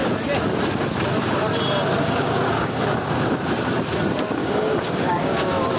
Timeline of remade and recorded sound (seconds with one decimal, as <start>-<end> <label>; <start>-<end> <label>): 0.0-2.0 recorded; 2.0-3.3 remade; 3.3-4.4 recorded; 4.4-5.8 remade